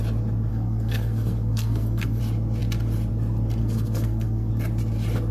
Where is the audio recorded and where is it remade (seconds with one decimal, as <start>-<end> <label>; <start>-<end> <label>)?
0.0-0.5 recorded; 0.5-2.2 remade; 2.2-3.6 recorded; 3.6-4.5 remade; 4.5-5.3 recorded